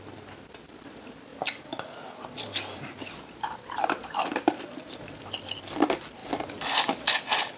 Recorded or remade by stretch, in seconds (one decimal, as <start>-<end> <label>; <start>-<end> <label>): 0.0-6.2 remade; 6.2-7.6 recorded

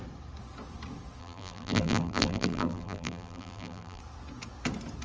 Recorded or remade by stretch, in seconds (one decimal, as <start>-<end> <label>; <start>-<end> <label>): 0.0-1.2 recorded; 1.2-4.0 remade; 4.0-5.0 recorded

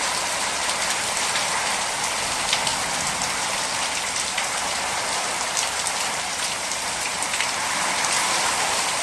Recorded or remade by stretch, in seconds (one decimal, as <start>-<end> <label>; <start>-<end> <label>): 0.0-2.7 remade; 2.7-3.4 recorded; 3.4-9.0 remade